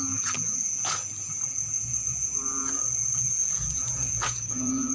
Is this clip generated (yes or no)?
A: yes